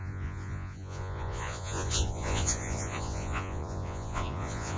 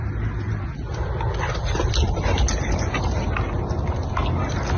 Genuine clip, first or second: second